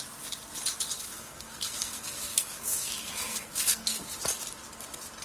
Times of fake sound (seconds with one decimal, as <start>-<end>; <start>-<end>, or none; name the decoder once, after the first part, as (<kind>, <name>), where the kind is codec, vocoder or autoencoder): 1.1-4.1 (codec, SNAC)